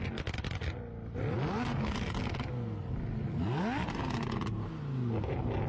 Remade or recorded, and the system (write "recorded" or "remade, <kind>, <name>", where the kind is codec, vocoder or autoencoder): recorded